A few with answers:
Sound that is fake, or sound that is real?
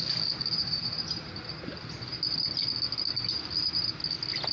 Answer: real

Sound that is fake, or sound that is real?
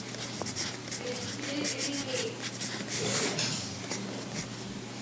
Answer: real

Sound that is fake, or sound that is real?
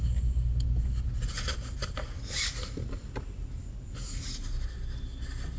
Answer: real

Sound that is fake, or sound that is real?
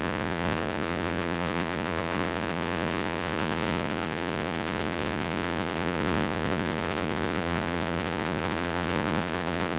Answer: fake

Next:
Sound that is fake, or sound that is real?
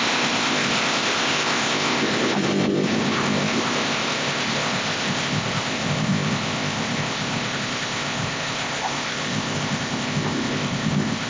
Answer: fake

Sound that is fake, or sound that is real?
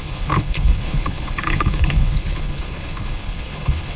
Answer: fake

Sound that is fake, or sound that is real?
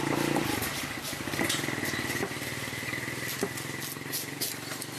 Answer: real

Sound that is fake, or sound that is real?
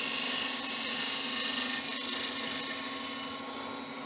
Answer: real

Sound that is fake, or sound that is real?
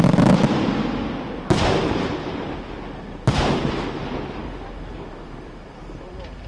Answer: real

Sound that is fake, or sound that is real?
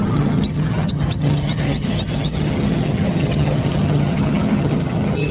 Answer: fake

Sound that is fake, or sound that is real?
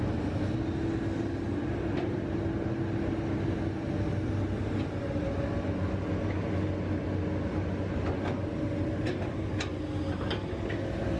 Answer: real